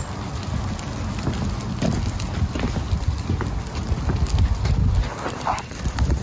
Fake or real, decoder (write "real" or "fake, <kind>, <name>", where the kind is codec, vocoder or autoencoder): real